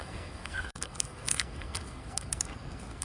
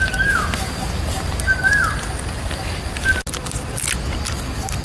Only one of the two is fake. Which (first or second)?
first